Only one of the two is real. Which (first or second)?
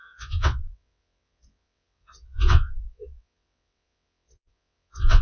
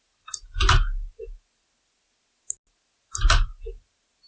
second